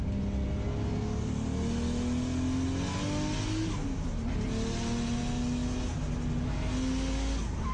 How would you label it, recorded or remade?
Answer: recorded